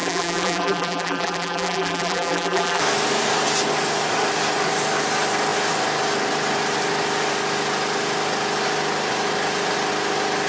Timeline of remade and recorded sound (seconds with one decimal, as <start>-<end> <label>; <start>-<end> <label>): 0.0-2.8 remade; 2.8-10.5 recorded